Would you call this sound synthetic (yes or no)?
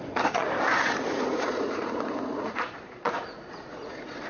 yes